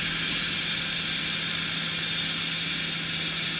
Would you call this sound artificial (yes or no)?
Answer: no